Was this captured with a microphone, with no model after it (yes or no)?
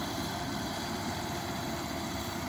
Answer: no